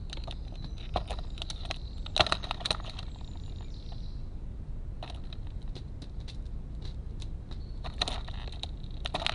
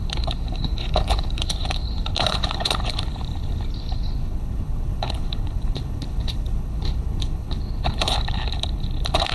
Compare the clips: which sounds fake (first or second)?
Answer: second